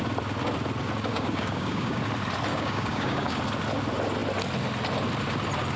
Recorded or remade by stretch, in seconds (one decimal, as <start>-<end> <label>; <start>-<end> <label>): 0.0-1.1 recorded; 1.1-2.0 remade; 2.0-2.5 recorded; 2.5-3.4 remade; 3.4-5.8 recorded